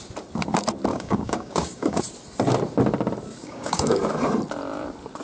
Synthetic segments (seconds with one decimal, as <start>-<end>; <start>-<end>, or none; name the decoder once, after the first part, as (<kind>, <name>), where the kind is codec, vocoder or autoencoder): 0.9-2.0 (codec, DAC); 3.4-4.0